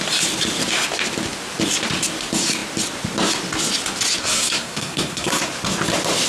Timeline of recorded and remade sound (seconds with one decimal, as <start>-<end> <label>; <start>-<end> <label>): 0.0-4.2 recorded; 4.2-5.5 remade; 5.5-6.3 recorded